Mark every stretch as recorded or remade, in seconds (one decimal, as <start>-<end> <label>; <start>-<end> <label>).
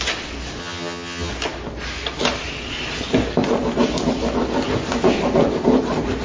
0.0-0.6 recorded; 0.6-1.3 remade; 1.3-6.2 recorded